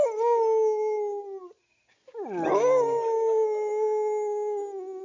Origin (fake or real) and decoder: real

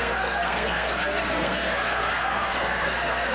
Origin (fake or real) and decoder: fake, codec, SNAC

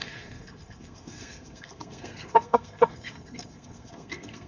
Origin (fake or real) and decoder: fake, codec, SNAC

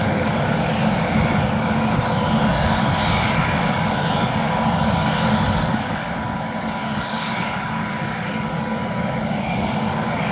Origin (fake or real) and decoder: fake, codec, DAC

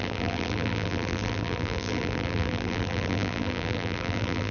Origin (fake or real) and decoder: fake, vocoder, BigVGAN v2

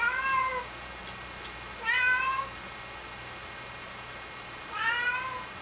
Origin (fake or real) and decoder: real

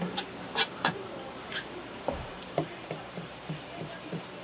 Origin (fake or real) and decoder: fake, vocoder, BigVGAN v2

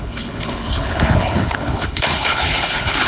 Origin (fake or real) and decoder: fake, codec, HILCodec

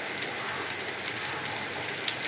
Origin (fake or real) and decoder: real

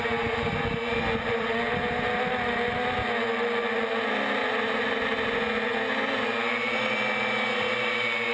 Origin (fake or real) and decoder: real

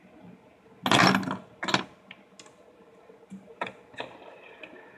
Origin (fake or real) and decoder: real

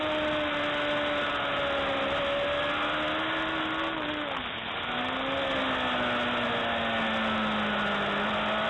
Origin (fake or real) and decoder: real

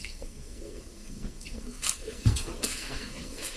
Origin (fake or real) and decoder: fake, codec, SNAC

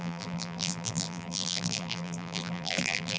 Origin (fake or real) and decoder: fake, vocoder, BigVGAN v2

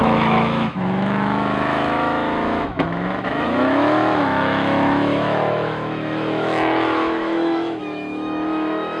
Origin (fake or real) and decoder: fake, autoencoder, DAC-VAE